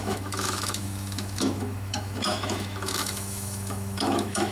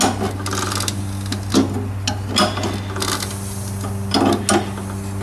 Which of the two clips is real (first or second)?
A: second